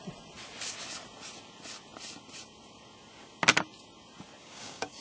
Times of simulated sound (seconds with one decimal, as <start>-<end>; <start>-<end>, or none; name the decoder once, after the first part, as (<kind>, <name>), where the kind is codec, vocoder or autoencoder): 4.4-5.0 (codec, DAC)